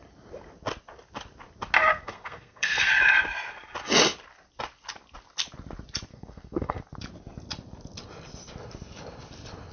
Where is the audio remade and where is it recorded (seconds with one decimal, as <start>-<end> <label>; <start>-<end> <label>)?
0.0-1.9 recorded; 1.9-2.9 remade; 2.9-6.1 recorded; 6.1-6.8 remade; 6.8-9.7 recorded